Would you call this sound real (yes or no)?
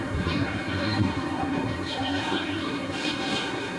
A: no